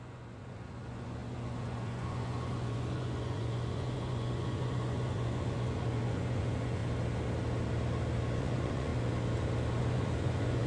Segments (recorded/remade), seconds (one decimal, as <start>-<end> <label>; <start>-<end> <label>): 0.0-6.8 remade; 6.8-8.4 recorded; 8.4-8.9 remade; 8.9-9.8 recorded; 9.8-10.7 remade